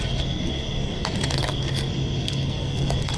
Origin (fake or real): fake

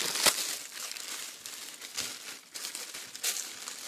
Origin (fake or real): real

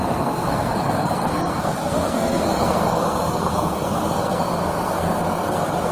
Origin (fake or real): fake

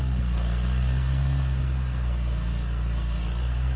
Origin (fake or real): fake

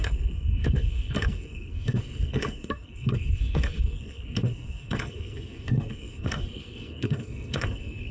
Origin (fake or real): fake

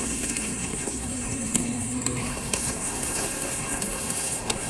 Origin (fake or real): fake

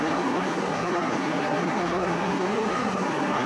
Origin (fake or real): fake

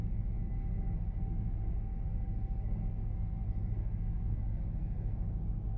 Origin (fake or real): fake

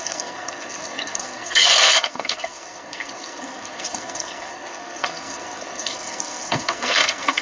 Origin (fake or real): fake